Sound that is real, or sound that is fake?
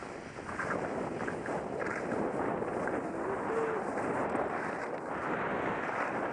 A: real